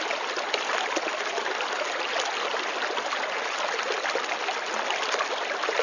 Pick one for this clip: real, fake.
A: real